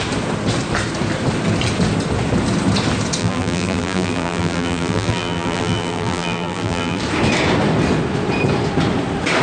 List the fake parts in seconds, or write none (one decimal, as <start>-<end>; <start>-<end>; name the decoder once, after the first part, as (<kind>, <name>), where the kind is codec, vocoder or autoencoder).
3.2-7.0 (vocoder, BigVGAN v2)